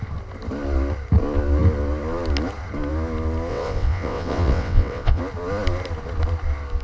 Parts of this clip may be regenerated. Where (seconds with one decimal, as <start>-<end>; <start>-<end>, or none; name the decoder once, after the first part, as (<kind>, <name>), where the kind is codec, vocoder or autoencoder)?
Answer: 3.5-5.2 (vocoder, WaveNeXt)